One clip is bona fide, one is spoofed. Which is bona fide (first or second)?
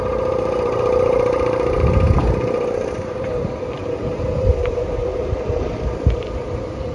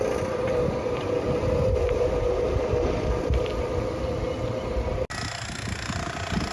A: second